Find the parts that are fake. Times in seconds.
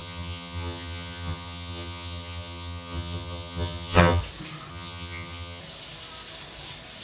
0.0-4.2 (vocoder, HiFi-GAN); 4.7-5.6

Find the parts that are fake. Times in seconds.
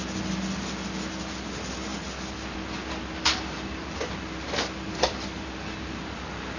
none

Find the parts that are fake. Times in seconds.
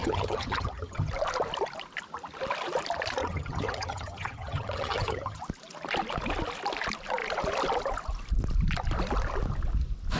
0.0-1.1 (vocoder, HiFi-GAN); 3.2-5.4